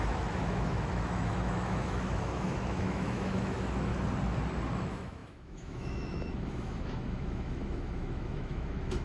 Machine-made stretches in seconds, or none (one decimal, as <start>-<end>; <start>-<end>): 0.0-3.9; 4.7-9.0